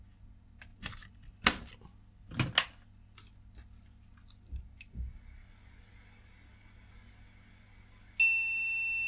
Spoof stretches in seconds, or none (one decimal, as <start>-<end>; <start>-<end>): none